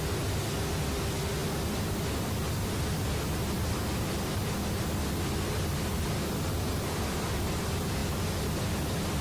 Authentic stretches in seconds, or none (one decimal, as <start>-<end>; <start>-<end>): 0.0-9.2